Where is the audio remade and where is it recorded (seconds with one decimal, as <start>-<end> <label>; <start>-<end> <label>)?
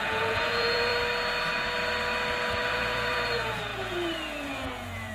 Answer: 0.0-0.9 remade; 0.9-2.7 recorded; 2.7-5.1 remade